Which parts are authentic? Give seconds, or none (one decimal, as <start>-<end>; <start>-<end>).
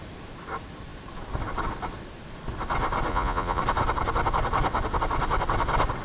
0.0-3.1; 3.6-6.0